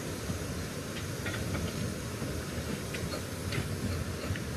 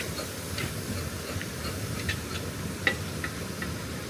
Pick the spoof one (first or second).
second